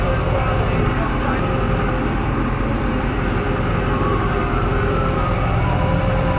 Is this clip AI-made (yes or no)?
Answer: no